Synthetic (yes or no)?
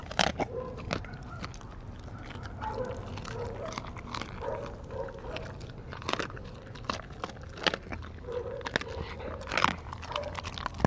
no